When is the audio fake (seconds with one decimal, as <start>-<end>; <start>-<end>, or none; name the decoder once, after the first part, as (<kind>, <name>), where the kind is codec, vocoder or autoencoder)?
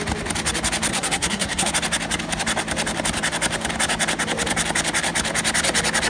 0.9-1.7 (codec, SNAC)